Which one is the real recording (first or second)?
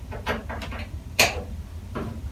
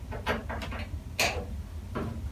second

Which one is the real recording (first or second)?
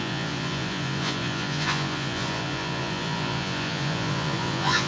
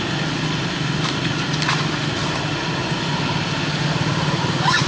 second